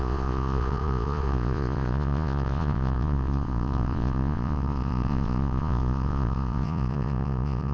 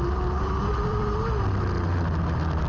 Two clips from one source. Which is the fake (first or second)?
first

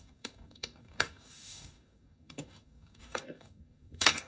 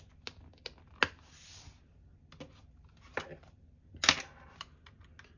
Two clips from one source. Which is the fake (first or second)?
first